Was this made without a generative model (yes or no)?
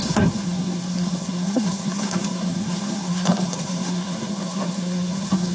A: no